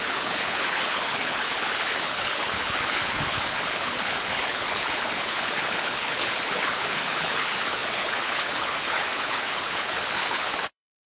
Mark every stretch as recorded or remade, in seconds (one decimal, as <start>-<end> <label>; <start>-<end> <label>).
0.0-11.1 remade